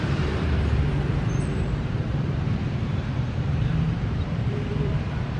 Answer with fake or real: fake